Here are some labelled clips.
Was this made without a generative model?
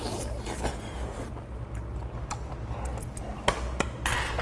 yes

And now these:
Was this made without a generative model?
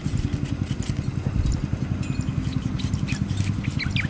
yes